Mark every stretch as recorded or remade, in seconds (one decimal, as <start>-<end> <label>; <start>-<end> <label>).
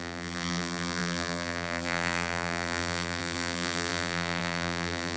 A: 0.0-5.2 remade